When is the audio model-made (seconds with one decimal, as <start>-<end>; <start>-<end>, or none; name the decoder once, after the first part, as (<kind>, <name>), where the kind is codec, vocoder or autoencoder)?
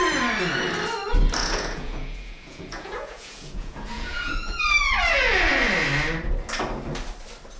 1.4-4.6 (vocoder, Vocos)